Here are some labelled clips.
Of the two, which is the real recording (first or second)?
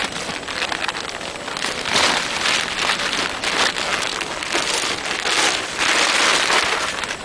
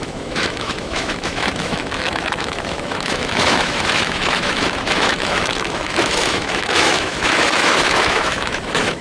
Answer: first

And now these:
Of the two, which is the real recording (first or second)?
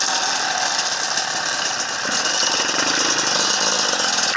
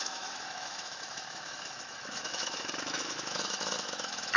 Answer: first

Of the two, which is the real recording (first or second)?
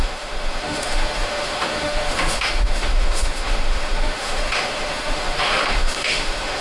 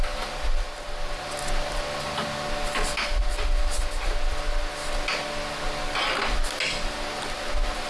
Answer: second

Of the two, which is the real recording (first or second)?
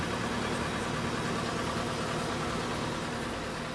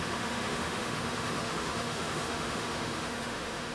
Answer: first